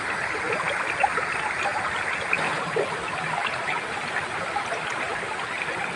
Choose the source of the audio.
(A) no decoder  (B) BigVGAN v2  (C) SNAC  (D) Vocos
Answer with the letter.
A